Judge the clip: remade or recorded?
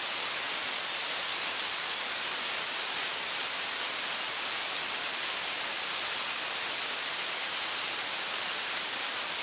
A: recorded